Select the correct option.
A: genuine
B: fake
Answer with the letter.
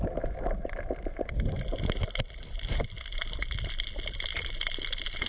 A